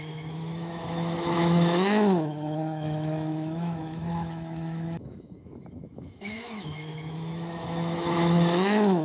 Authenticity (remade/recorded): remade